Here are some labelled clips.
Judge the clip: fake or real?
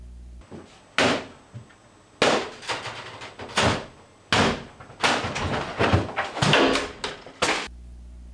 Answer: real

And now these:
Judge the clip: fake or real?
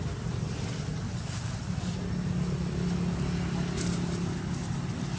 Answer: real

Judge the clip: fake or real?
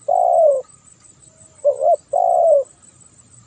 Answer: real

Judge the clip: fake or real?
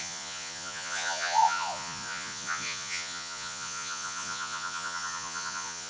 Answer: fake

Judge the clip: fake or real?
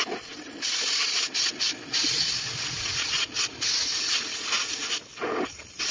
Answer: real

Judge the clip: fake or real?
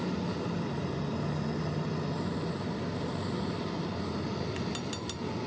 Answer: real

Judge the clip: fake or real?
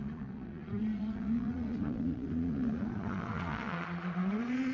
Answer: fake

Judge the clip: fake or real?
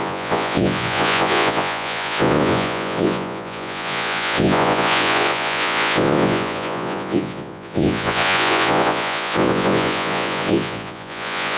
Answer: fake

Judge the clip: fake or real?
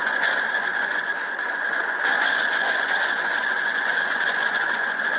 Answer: fake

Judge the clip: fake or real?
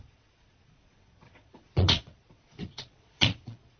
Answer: fake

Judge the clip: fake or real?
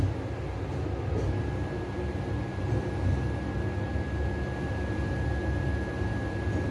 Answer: real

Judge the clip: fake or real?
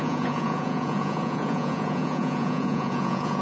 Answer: fake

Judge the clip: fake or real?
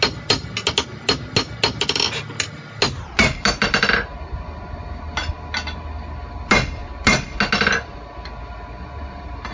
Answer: real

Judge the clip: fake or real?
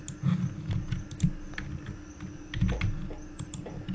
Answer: real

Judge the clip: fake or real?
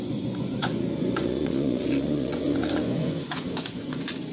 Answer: fake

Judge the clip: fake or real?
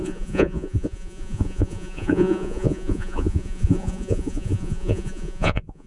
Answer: fake